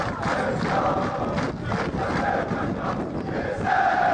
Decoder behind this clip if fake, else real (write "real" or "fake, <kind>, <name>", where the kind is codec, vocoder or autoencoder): real